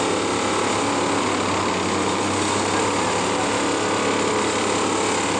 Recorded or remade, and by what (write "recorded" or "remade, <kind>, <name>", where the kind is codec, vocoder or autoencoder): recorded